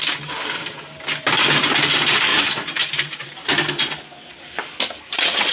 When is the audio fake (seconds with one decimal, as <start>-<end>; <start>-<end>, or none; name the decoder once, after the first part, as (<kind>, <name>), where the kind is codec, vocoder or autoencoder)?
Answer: 2.3-3.7 (vocoder, BigVGAN v2)